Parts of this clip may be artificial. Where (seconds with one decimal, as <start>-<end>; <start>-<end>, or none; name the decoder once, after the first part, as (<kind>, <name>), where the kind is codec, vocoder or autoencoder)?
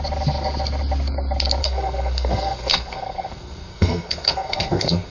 1.6-5.1 (codec, SNAC)